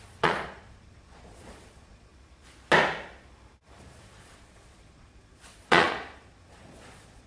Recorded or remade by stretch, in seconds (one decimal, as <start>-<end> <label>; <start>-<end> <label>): 0.0-2.1 remade; 2.1-3.8 recorded; 3.8-7.3 remade